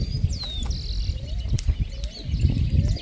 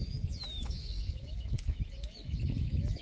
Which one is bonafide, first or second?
first